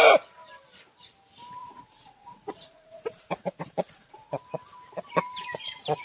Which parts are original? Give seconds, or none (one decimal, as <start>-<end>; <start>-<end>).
0.0-1.6; 4.3-6.0